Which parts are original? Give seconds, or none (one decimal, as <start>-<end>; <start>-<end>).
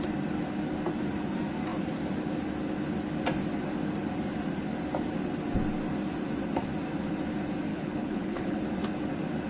0.0-7.7; 8.6-9.5